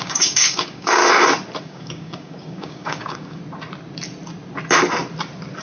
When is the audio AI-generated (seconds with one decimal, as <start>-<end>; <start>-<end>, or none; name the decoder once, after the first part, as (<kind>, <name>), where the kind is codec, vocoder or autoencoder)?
0.0-1.0 (codec, DAC); 1.6-3.4